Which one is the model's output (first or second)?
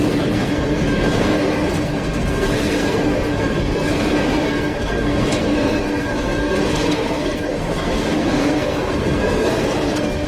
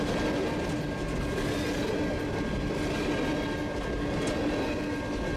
first